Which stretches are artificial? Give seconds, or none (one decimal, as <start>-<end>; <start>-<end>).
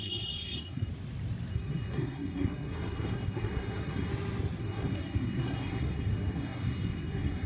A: 0.0-0.9; 1.5-4.1; 4.6-7.5